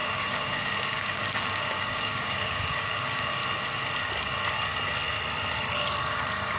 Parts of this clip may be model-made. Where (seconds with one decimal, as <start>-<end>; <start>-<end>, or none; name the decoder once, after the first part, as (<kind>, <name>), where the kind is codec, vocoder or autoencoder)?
0.0-3.4 (codec, DAC)